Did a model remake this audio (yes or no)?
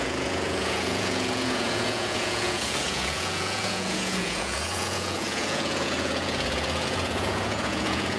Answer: yes